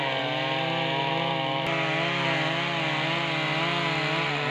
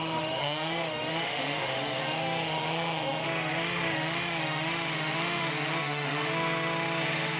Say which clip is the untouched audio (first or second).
first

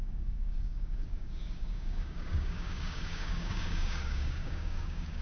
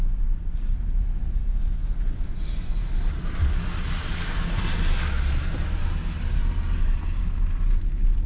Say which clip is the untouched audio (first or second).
second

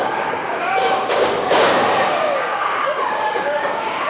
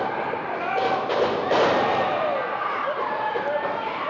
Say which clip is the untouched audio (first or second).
second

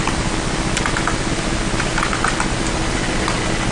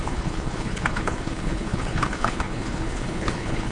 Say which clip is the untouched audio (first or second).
first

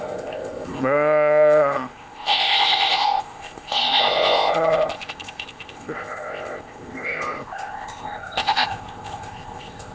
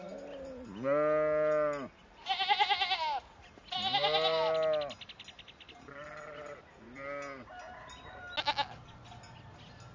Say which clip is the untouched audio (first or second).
second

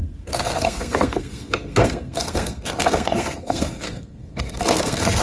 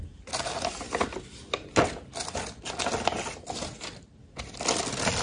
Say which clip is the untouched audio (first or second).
second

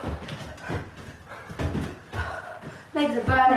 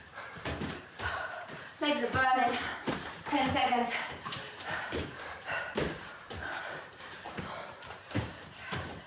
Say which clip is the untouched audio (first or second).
first